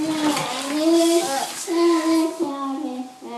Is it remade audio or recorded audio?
recorded